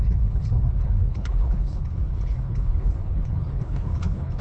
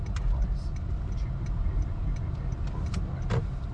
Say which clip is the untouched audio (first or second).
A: second